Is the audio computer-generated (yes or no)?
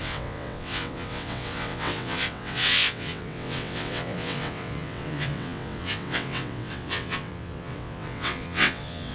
yes